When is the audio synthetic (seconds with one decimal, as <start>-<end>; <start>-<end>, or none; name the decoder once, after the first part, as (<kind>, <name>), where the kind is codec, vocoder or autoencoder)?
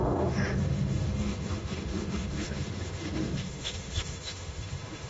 0.0-5.1 (autoencoder, DAC-VAE)